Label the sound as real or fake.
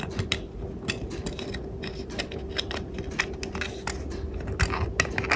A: real